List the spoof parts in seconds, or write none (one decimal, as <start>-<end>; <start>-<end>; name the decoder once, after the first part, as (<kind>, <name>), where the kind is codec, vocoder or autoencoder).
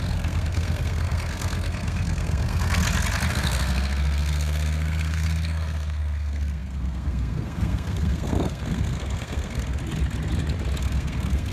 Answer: 0.0-2.8 (codec, SNAC); 3.3-9.8; 10.8-11.5